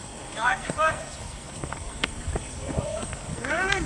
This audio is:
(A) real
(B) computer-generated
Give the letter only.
B